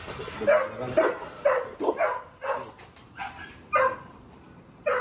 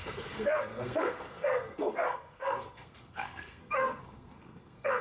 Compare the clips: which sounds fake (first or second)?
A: second